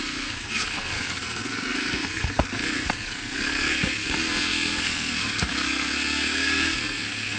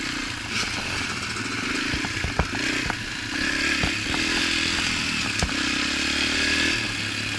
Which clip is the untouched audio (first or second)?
second